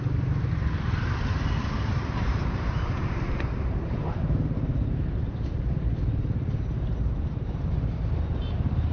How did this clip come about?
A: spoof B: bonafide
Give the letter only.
A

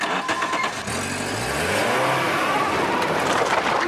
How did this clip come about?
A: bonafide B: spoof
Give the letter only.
A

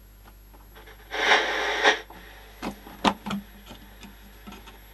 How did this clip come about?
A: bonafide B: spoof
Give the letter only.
A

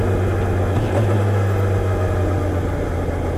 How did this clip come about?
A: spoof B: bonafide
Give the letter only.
B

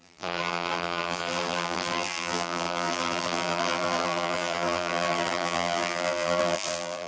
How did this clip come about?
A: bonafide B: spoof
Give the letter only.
B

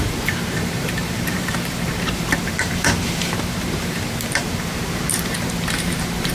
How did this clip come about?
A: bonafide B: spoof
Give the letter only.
B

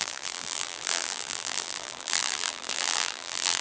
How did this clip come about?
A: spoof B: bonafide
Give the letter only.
A